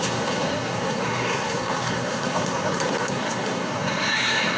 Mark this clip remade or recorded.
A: remade